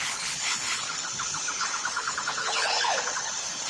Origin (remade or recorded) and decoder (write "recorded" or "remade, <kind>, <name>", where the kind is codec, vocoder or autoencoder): remade, codec, HILCodec